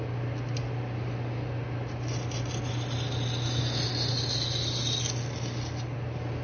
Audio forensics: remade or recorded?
recorded